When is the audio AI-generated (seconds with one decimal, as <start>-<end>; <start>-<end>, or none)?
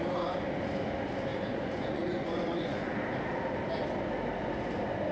1.3-2.9